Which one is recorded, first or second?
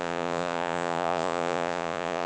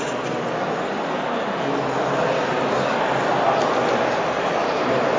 second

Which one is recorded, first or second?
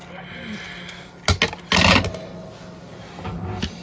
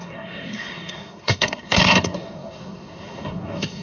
first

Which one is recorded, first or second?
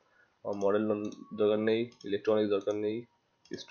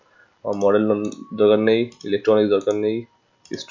second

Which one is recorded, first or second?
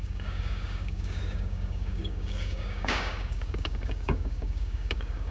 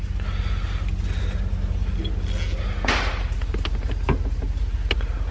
second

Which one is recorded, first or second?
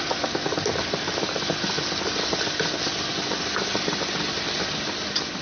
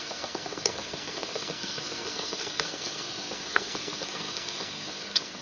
first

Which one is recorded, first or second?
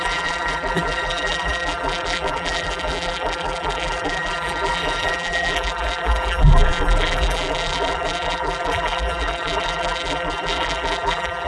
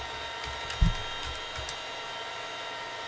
second